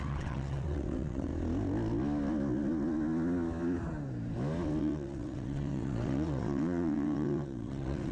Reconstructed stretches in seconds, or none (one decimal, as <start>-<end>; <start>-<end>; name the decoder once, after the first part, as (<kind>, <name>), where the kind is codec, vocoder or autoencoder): 0.0-1.3 (vocoder, WaveNeXt); 4.8-8.1